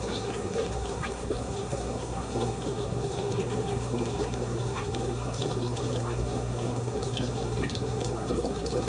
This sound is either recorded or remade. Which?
remade